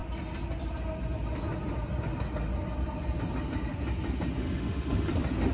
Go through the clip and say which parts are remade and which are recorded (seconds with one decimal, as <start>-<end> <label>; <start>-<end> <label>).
0.0-4.4 recorded; 4.4-5.1 remade; 5.1-5.5 recorded